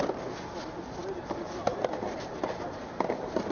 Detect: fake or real real